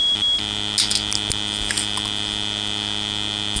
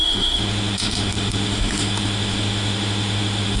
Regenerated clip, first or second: second